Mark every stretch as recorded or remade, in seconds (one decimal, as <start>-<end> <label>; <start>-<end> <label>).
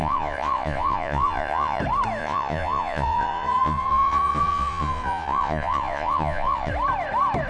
0.0-1.8 remade; 1.8-2.2 recorded; 2.2-6.7 remade; 6.7-7.5 recorded